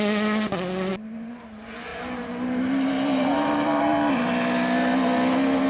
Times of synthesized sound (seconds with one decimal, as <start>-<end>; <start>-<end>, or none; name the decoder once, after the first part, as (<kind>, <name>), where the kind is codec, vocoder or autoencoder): 0.9-1.4 (vocoder, BigVGAN v2); 1.9-4.1